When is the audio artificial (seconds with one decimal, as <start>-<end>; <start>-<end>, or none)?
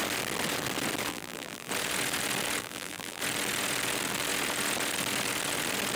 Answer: 1.1-1.7; 2.6-3.2